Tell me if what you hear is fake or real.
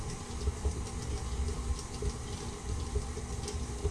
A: real